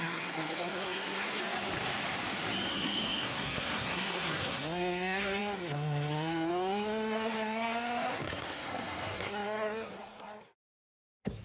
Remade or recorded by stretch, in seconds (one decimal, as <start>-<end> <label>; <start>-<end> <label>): 0.0-1.4 remade; 1.4-2.7 recorded; 2.7-11.4 remade